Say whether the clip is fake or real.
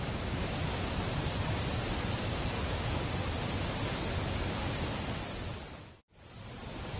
real